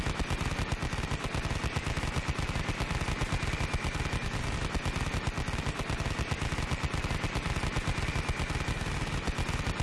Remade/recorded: recorded